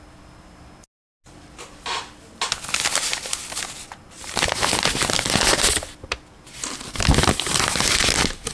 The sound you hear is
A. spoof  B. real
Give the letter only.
B